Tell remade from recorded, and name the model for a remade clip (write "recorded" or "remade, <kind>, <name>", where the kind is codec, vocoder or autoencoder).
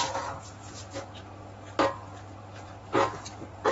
recorded